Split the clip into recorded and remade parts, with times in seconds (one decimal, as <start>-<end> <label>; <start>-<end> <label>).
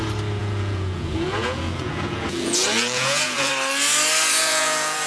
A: 0.0-0.4 recorded; 0.4-3.5 remade; 3.5-4.4 recorded; 4.4-5.1 remade